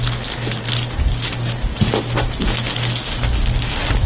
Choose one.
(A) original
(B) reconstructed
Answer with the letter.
A